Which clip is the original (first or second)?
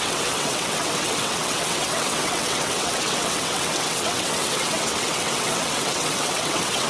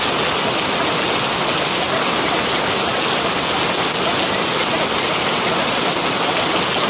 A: second